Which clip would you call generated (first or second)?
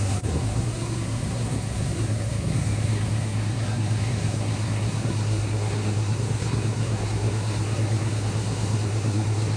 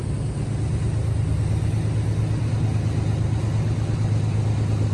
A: first